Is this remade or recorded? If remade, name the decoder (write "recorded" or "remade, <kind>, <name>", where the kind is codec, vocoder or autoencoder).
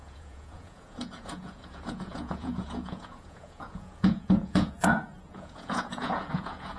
remade, vocoder, Vocos